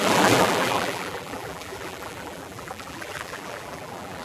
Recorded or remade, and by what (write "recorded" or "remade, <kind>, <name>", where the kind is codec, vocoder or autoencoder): remade, vocoder, BigVGAN v2